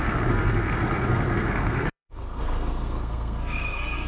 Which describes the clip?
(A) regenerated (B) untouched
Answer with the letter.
A